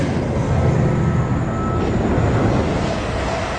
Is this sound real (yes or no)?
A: yes